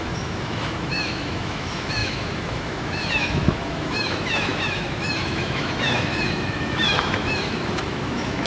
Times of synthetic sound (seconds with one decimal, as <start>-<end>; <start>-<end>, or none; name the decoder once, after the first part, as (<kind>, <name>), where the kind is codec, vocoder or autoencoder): 0.0-8.5 (autoencoder, DAC-VAE)